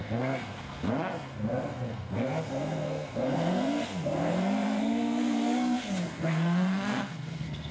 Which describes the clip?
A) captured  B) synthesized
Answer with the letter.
B